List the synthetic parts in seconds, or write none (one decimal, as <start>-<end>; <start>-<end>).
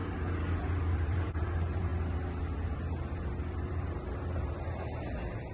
0.0-1.9; 3.5-5.5